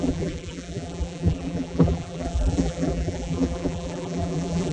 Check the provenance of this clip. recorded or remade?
remade